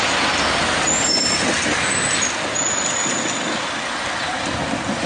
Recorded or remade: recorded